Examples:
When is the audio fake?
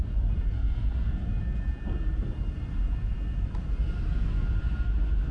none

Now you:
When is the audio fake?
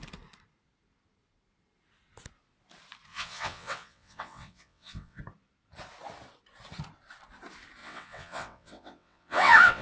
3.1-5.2 (vocoder, WaveNeXt); 7.8-9.8